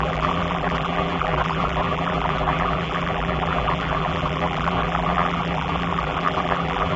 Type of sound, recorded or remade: remade